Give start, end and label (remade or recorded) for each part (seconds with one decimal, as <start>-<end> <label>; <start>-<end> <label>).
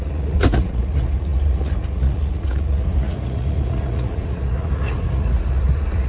0.0-6.1 remade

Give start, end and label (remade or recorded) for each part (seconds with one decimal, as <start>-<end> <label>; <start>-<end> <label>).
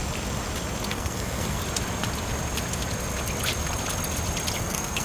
0.0-0.9 recorded; 0.9-1.6 remade; 1.6-4.6 recorded; 4.6-5.0 remade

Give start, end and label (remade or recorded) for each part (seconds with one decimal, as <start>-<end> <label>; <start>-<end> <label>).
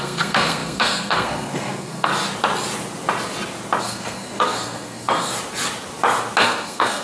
0.0-2.1 remade; 2.1-3.8 recorded; 3.8-5.3 remade; 5.3-6.4 recorded; 6.4-7.0 remade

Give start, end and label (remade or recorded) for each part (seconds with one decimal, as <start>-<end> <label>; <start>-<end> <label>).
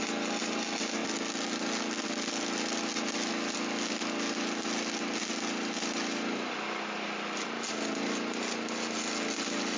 0.0-9.8 recorded